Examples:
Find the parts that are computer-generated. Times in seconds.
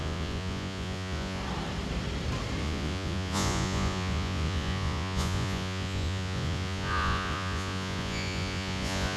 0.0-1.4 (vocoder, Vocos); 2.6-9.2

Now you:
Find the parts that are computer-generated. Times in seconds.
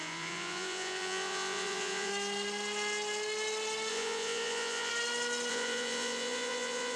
0.0-2.1 (vocoder, Vocos); 3.9-4.9; 5.5-7.0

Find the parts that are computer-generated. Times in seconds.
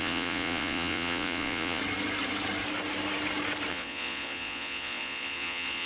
0.0-1.8 (vocoder, Vocos); 3.7-5.9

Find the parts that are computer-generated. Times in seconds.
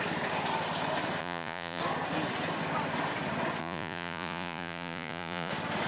1.2-1.8 (vocoder, Vocos); 3.6-5.5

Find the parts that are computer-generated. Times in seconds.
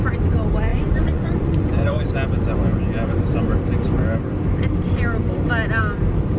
0.7-2.0 (vocoder, Vocos)